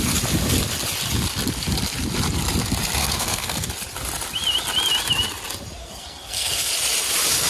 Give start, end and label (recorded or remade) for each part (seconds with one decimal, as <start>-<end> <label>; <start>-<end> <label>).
0.0-3.0 recorded; 3.0-3.7 remade; 3.7-5.8 recorded; 5.8-6.7 remade; 6.7-7.5 recorded